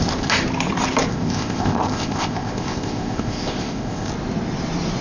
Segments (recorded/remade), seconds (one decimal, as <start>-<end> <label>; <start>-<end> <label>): 0.0-1.1 recorded; 1.1-4.1 remade; 4.1-5.0 recorded

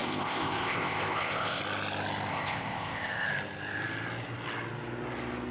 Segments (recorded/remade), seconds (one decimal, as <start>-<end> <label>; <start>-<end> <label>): 0.0-1.6 remade; 1.6-2.3 recorded; 2.3-3.3 remade; 3.3-5.5 recorded

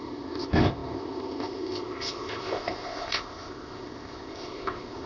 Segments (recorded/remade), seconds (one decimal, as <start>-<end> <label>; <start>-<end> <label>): 0.0-5.1 remade

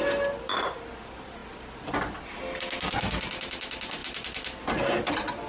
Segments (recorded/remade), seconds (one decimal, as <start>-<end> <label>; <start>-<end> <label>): 0.0-5.5 recorded

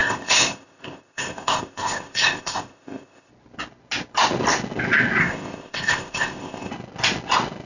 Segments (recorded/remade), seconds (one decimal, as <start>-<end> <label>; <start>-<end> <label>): 0.0-3.3 remade; 3.3-5.2 recorded; 5.2-6.7 remade; 6.7-7.7 recorded

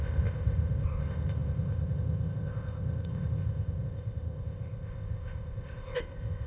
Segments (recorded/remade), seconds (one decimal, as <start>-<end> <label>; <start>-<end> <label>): 0.0-6.5 remade

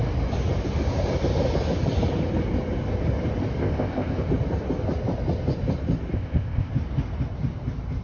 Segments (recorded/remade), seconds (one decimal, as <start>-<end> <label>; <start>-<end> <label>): 0.0-3.6 recorded; 3.6-4.3 remade; 4.3-6.1 recorded; 6.1-6.7 remade; 6.7-8.0 recorded